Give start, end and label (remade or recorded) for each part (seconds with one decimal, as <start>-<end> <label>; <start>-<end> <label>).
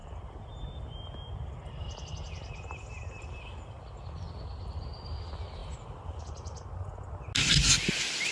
0.0-0.5 remade; 0.5-5.6 recorded; 5.6-6.2 remade; 6.2-8.3 recorded